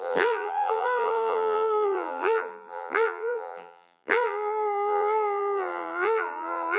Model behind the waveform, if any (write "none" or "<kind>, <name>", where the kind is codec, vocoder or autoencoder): vocoder, BigVGAN v2